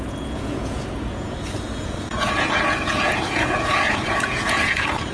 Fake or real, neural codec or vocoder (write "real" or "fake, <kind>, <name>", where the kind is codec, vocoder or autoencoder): fake, vocoder, Vocos